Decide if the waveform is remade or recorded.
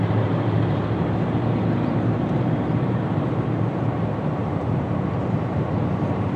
remade